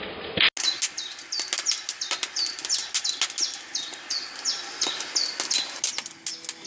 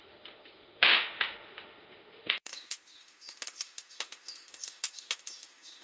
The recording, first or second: first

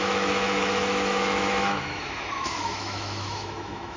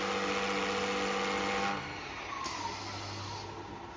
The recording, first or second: second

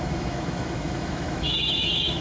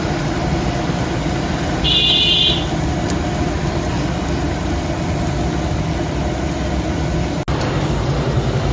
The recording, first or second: second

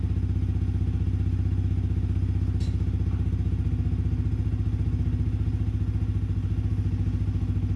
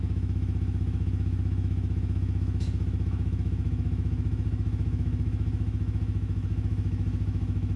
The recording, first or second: first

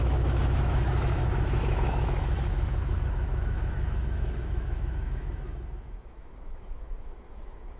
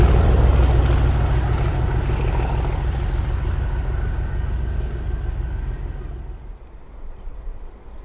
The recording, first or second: second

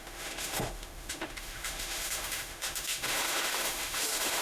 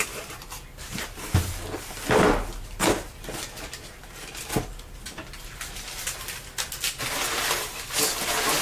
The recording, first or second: second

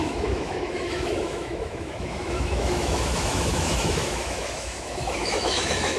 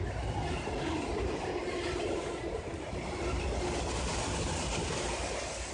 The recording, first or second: second